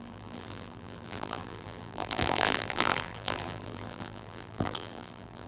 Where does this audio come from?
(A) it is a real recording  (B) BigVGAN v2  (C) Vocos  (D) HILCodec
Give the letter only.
B